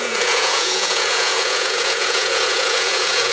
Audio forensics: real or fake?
fake